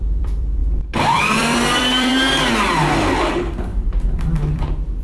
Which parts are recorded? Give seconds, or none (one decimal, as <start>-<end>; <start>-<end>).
2.1-3.3